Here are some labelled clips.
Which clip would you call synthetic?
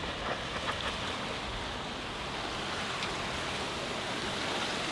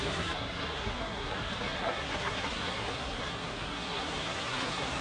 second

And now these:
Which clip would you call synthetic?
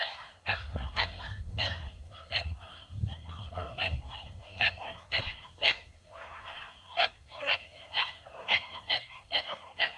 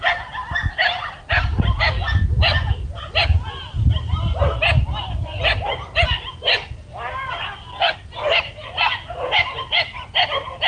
first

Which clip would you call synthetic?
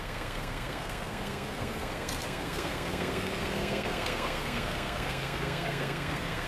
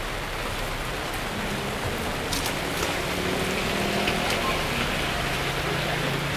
first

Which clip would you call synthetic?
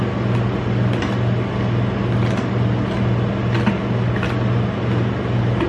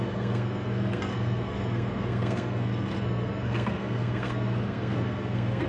second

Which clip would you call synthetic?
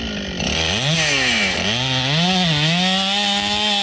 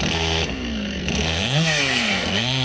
second